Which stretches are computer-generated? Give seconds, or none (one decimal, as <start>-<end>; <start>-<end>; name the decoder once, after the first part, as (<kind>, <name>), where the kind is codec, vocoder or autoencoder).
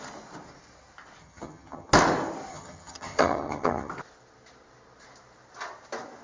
1.2-1.9 (vocoder, HiFi-GAN); 2.5-3.9